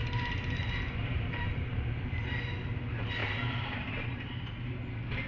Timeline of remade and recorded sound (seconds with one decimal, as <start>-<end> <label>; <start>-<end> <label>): 0.0-2.4 remade; 2.4-3.2 recorded; 3.2-4.5 remade; 4.5-5.3 recorded

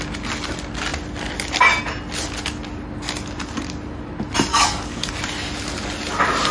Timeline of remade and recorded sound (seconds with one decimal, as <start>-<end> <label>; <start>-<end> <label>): 0.0-4.5 recorded; 4.5-5.1 remade; 5.1-6.5 recorded

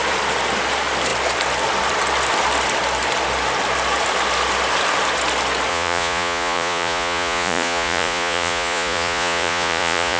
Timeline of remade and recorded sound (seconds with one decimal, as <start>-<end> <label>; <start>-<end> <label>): 0.0-5.7 recorded; 5.7-10.2 remade

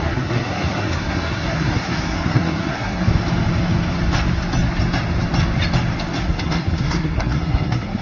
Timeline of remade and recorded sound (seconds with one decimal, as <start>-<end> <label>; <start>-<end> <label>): 0.0-3.1 remade; 3.1-6.2 recorded; 6.2-8.0 remade

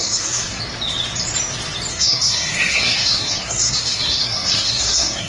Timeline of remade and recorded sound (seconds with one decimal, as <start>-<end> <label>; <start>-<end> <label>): 0.0-0.6 remade; 0.6-1.9 recorded; 1.9-5.3 remade

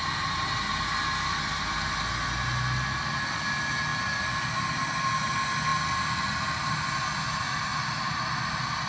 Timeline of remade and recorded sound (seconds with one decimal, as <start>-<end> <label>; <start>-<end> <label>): 0.0-3.9 recorded; 3.9-4.6 remade; 4.6-8.9 recorded

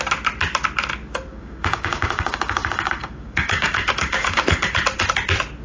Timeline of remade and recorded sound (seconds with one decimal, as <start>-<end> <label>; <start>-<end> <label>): 0.0-1.3 recorded; 1.3-4.7 remade; 4.7-5.6 recorded